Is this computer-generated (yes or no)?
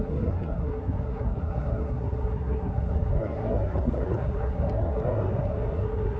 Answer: yes